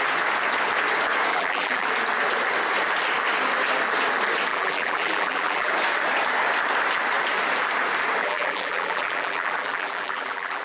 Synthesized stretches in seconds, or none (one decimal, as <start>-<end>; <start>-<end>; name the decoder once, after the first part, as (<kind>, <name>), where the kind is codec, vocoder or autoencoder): 1.3-1.9 (vocoder, BigVGAN v2); 4.5-5.7; 8.2-10.6